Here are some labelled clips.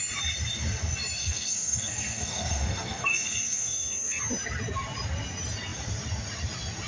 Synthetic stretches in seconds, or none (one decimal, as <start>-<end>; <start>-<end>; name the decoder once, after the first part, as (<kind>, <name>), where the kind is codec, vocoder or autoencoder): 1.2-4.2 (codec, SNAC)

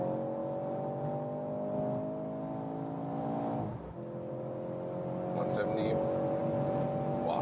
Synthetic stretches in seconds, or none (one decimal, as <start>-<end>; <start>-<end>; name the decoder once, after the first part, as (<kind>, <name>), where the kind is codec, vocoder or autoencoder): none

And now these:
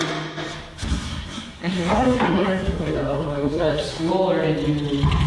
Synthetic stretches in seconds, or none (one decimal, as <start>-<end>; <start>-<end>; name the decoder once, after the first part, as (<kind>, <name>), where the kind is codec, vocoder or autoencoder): 0.9-4.1 (codec, SNAC)

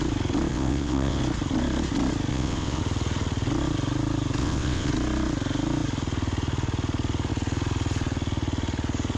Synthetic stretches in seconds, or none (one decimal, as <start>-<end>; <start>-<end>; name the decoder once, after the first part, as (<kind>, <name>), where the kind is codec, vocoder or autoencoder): 0.5-1.2 (vocoder, WaveNeXt); 2.3-2.8; 4.4-4.9

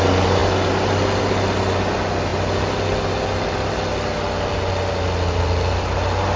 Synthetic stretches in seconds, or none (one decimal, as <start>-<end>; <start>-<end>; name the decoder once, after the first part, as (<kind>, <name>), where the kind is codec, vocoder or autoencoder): none